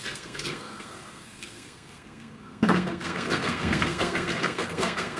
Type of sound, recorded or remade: remade